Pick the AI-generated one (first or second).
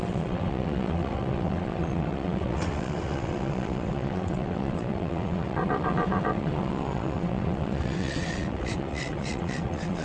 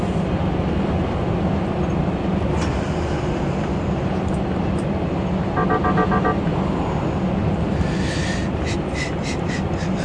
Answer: first